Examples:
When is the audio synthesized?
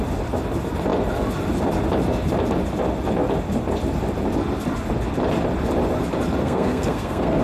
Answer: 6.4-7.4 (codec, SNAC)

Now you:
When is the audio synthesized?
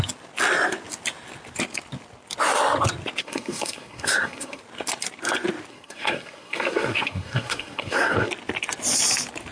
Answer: 3.2-4.6 (codec, SNAC); 5.7-8.3